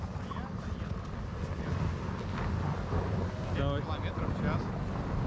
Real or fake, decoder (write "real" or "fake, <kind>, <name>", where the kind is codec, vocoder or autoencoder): real